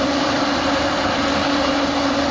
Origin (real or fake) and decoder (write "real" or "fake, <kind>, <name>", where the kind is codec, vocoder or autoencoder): real